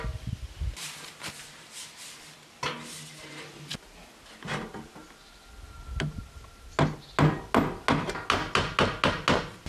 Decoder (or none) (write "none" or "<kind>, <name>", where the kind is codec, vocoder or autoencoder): none